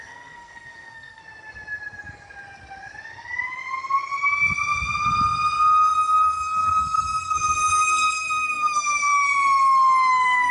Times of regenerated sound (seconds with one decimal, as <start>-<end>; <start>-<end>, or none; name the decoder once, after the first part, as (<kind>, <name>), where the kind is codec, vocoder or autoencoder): 0.0-1.2 (codec, SNAC); 5.9-9.1; 10.1-10.5